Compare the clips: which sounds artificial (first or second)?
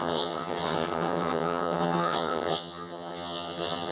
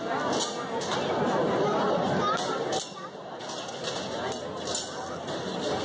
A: first